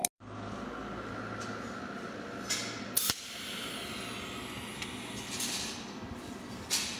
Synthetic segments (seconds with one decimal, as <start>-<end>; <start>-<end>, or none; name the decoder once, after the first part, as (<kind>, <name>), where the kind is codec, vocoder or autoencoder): none